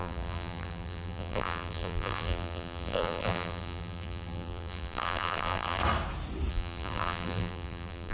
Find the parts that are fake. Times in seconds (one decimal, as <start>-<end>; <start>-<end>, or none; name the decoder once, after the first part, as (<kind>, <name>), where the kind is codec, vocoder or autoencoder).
0.0-5.8 (vocoder, BigVGAN v2); 6.5-8.1